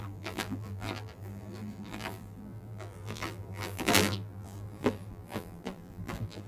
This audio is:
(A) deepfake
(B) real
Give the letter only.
A